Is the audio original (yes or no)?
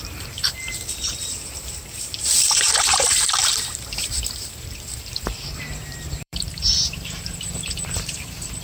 no